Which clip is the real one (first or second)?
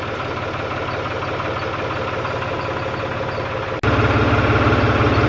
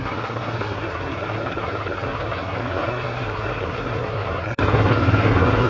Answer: first